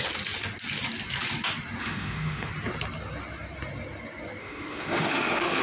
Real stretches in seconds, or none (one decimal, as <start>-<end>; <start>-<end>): 0.0-1.8; 2.5-4.4